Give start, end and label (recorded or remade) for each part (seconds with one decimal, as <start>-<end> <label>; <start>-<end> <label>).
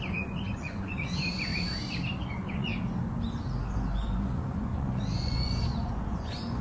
0.0-1.5 remade; 1.5-2.3 recorded; 2.3-2.7 remade; 2.7-3.7 recorded; 3.7-6.6 remade